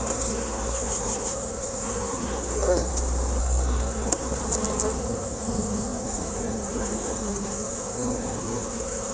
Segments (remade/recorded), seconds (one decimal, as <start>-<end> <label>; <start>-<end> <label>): 0.0-2.9 remade; 2.9-3.4 recorded; 3.4-4.4 remade; 4.4-5.0 recorded; 5.0-9.1 remade